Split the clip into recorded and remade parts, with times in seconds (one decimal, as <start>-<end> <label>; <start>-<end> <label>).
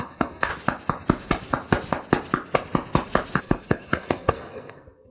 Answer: 0.0-0.5 remade; 0.5-3.4 recorded; 3.4-5.1 remade